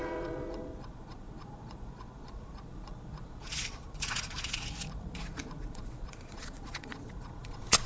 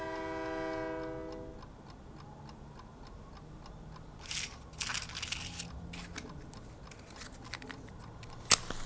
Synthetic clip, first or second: first